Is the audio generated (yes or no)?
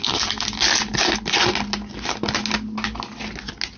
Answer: no